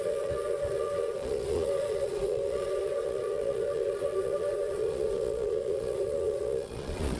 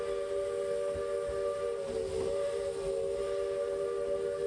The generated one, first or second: first